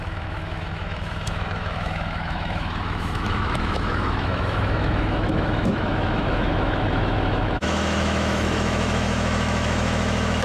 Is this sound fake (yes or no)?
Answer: yes